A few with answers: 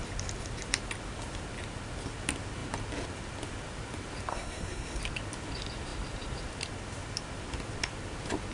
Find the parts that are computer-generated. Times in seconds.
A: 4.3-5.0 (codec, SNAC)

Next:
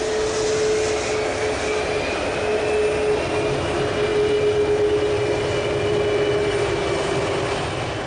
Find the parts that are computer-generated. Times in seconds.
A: none

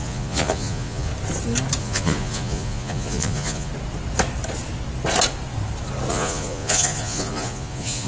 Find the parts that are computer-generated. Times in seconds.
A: 0.0-1.1 (vocoder, Vocos); 1.8-3.7; 6.1-8.1